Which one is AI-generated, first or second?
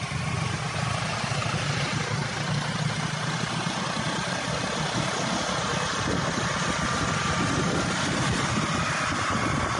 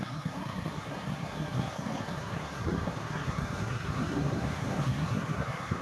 second